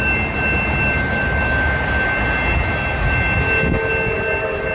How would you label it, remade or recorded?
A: recorded